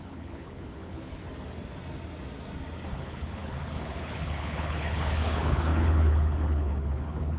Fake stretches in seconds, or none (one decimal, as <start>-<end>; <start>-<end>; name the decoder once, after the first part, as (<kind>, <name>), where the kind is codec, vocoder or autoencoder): 0.0-1.2 (codec, HILCodec); 2.9-7.4